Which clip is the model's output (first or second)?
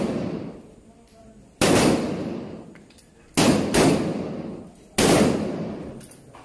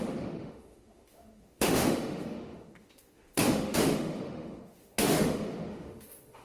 second